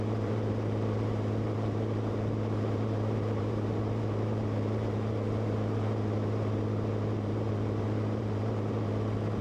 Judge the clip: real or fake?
fake